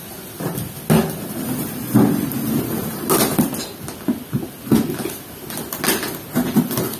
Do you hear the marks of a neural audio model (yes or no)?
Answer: no